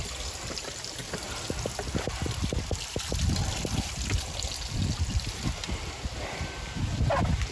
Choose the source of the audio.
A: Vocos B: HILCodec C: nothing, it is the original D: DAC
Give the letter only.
C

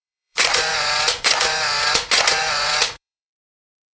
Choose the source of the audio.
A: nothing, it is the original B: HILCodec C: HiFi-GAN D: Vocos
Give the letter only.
D